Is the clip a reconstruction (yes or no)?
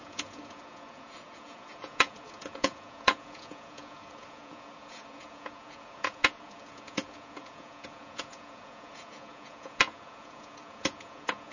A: yes